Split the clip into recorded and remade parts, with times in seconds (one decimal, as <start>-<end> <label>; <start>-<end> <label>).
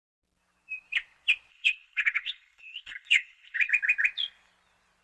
0.0-1.5 recorded; 1.5-3.7 remade; 3.7-5.0 recorded